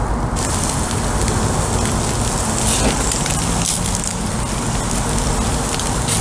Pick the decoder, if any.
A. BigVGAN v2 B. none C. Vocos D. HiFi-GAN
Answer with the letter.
B